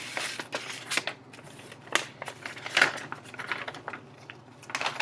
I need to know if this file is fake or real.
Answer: real